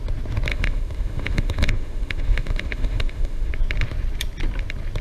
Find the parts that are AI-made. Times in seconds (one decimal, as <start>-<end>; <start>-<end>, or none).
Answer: 0.5-3.5